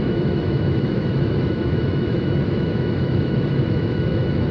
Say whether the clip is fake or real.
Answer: fake